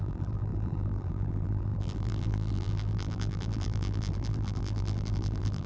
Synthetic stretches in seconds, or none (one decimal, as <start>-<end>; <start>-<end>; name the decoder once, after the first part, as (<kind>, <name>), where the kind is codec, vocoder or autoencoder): 0.0-5.7 (vocoder, BigVGAN v2)